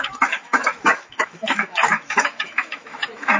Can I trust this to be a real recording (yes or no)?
no